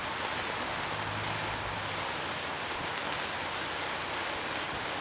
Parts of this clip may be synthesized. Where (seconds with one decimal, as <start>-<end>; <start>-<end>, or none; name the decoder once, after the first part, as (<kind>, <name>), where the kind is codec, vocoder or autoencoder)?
none

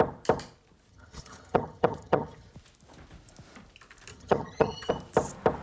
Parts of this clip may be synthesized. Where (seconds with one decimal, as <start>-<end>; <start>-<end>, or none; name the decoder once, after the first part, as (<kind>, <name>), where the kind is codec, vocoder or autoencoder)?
0.9-2.5 (vocoder, HiFi-GAN); 4.1-4.9

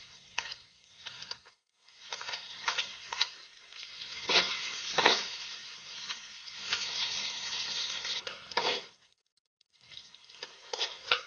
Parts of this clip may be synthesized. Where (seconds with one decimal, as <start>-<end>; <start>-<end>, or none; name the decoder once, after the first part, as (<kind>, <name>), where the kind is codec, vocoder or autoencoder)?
0.0-11.3 (codec, SNAC)